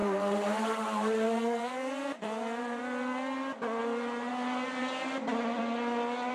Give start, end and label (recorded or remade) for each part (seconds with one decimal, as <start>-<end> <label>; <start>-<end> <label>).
0.0-2.8 remade; 2.8-4.8 recorded; 4.8-5.6 remade; 5.6-6.3 recorded